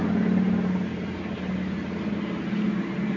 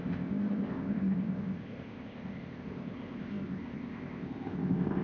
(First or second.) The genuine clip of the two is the first